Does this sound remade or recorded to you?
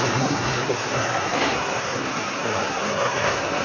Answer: remade